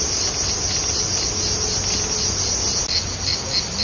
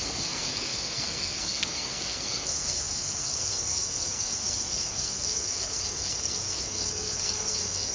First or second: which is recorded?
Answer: first